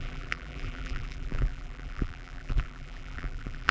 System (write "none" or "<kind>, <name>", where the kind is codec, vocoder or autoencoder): vocoder, BigVGAN v2